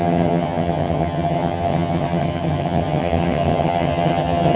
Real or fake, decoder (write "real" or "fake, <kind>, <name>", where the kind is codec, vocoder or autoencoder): fake, vocoder, HiFi-GAN